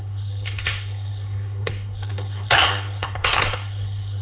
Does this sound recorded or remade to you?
remade